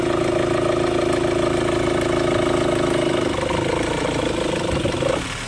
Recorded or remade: recorded